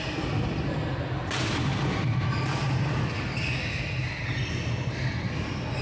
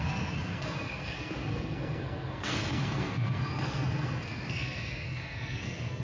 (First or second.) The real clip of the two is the first